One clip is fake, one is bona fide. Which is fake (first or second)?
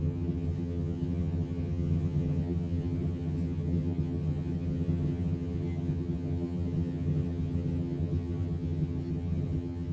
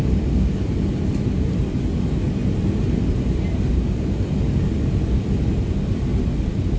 first